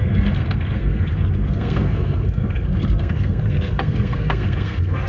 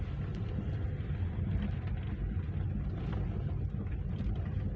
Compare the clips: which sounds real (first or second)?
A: second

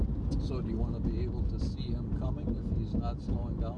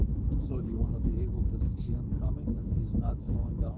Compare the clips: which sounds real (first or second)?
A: first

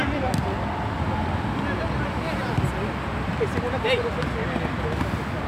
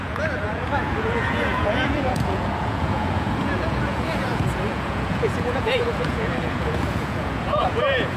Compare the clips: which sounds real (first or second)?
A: first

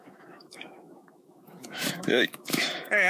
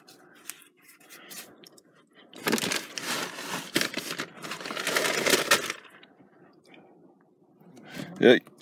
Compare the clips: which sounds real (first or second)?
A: second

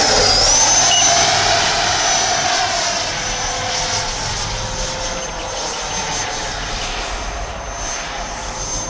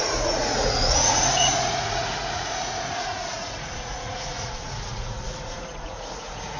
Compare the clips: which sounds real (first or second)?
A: first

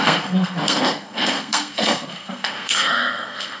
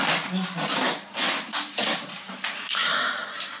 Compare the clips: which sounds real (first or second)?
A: second